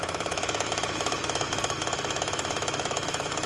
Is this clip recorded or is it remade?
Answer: remade